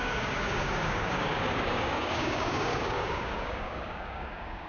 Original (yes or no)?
no